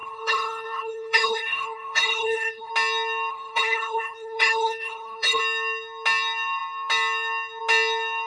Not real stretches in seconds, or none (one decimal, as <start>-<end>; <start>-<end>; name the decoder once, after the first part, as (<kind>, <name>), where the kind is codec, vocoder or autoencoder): 0.0-2.7 (codec, HILCodec); 3.3-5.4